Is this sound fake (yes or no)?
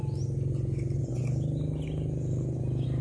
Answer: no